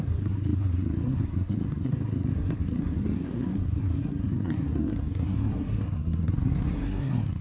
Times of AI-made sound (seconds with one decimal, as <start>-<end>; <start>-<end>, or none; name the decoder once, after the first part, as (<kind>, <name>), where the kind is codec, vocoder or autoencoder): 0.0-7.4 (codec, SNAC)